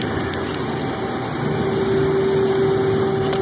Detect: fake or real real